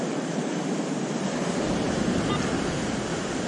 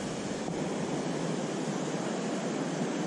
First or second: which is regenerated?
first